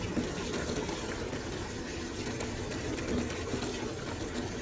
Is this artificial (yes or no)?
no